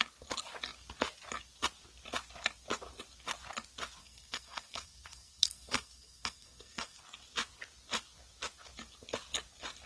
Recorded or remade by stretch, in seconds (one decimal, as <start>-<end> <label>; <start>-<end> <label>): 0.0-4.0 recorded; 4.0-7.0 remade; 7.0-9.9 recorded